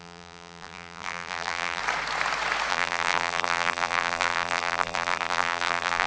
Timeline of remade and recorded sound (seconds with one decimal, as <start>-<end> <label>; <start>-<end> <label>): 0.0-1.8 remade; 1.8-2.7 recorded; 2.7-6.1 remade